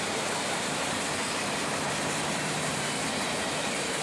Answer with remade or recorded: remade